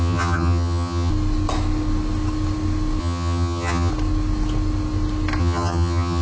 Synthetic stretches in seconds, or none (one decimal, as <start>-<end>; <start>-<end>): 0.0-1.1; 3.0-3.9; 5.4-6.2